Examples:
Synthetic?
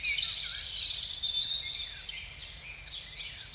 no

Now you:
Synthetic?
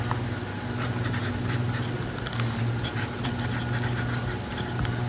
no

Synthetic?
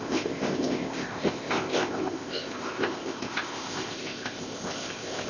yes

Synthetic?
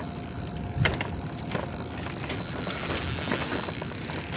no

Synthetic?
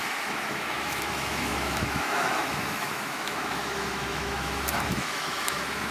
yes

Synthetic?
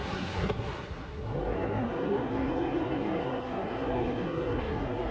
yes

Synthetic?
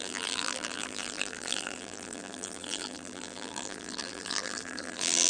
yes